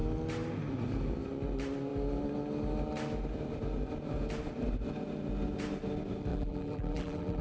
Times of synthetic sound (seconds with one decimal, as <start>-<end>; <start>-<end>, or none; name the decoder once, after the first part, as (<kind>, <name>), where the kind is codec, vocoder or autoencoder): 6.3-7.4 (vocoder, BigVGAN v2)